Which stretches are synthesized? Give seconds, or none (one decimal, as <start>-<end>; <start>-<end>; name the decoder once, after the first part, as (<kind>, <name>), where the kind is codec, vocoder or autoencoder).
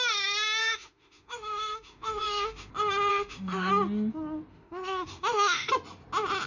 0.6-2.7 (autoencoder, DAC-VAE); 3.1-3.7; 4.5-5.7